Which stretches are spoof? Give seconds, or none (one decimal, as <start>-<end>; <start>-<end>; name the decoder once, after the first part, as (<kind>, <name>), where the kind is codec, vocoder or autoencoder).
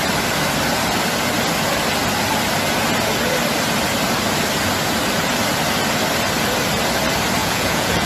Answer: 7.4-8.1 (vocoder, Vocos)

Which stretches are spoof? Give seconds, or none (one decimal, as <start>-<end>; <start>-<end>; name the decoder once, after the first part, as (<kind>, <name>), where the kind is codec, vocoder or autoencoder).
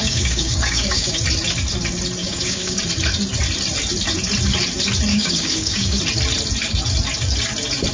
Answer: 0.0-1.2 (codec, DAC); 2.2-2.8; 5.1-6.0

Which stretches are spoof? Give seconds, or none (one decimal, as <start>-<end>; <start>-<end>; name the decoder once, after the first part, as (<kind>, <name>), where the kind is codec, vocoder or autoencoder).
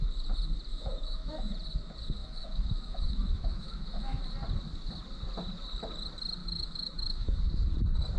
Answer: 0.7-1.5 (autoencoder, DAC-VAE); 2.2-4.2; 6.4-7.4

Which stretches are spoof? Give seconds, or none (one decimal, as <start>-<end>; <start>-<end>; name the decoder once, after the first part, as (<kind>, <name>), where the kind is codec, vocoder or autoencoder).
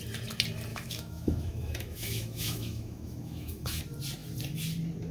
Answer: 0.7-3.8 (autoencoder, DAC-VAE)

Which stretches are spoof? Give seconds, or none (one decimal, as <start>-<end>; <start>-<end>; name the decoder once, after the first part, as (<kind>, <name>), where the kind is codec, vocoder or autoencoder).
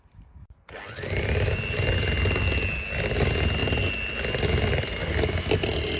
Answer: none